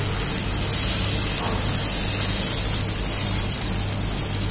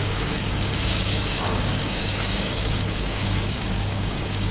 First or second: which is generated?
second